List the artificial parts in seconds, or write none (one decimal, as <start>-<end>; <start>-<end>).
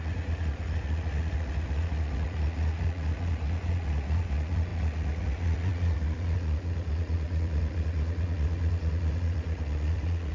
0.0-10.3